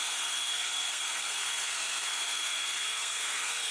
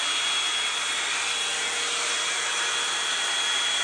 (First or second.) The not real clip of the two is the first